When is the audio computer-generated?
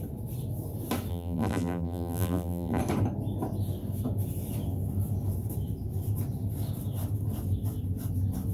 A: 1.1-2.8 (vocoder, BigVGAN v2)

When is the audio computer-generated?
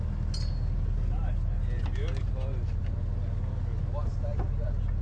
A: 2.2-3.0 (vocoder, BigVGAN v2)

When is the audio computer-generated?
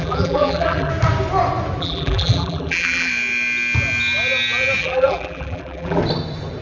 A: 0.0-0.9 (vocoder, BigVGAN v2); 1.8-3.1; 4.8-6.0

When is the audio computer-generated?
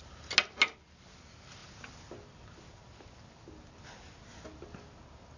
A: none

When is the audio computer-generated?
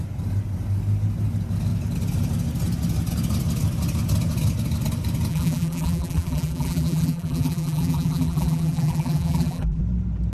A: 5.3-9.8 (vocoder, BigVGAN v2)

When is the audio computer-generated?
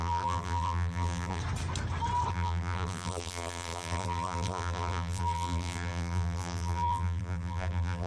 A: 0.0-1.4 (vocoder, BigVGAN v2); 2.3-8.1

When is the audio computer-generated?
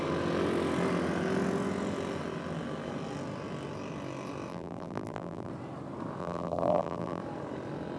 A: 4.5-5.5 (vocoder, BigVGAN v2); 6.2-7.2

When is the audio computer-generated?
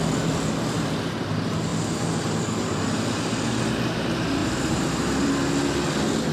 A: 4.4-5.3 (vocoder, BigVGAN v2)